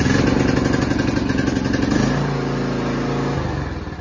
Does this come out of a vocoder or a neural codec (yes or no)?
no